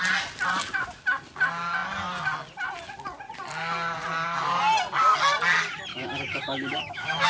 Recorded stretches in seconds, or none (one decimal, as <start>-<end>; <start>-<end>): 0.0-5.9